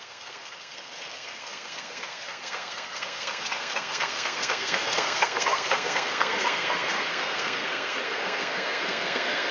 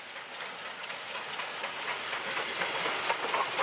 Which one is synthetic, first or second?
first